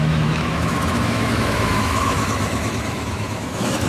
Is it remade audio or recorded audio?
remade